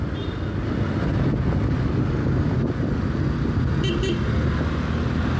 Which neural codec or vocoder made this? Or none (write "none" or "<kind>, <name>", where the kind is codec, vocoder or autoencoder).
none